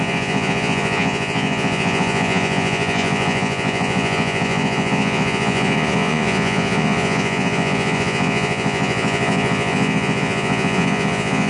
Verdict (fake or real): fake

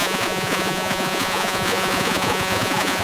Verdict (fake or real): fake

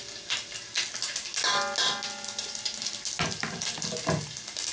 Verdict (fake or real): real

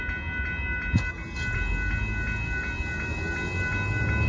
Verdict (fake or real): real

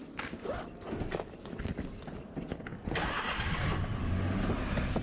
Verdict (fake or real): real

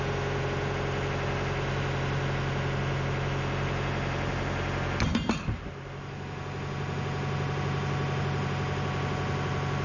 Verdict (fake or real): real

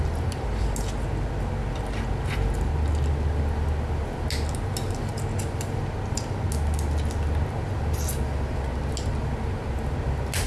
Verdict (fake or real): real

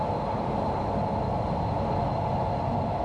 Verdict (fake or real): real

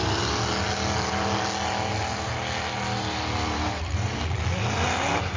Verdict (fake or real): real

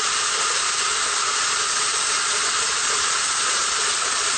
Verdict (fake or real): fake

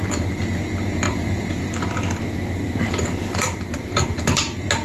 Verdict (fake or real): real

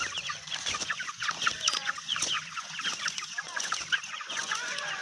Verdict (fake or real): fake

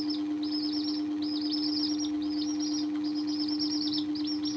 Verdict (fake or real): real